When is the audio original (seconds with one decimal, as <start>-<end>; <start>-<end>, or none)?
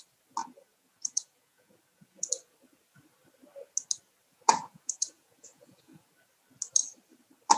0.0-0.4; 2.3-4.3; 6.1-7.6